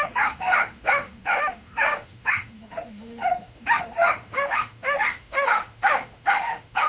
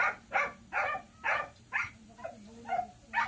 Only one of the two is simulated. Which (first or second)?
first